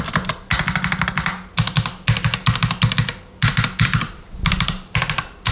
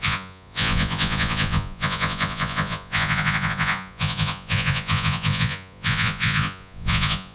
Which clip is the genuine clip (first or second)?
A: first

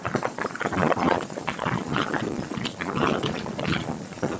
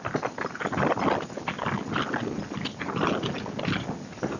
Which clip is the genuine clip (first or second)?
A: second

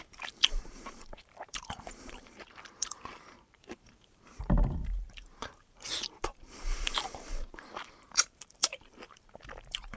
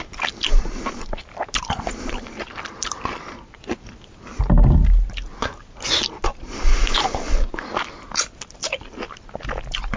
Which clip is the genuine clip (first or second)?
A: second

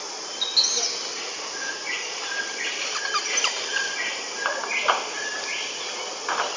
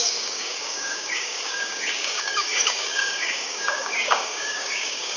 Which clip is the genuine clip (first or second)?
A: first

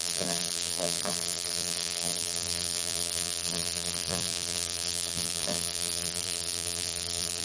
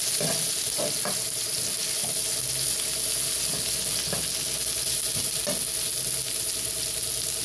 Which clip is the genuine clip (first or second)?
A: second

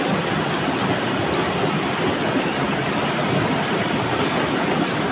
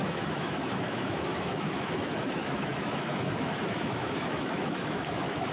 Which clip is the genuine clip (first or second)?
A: first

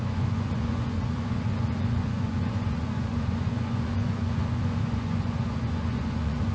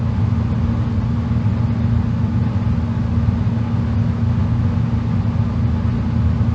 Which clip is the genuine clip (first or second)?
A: second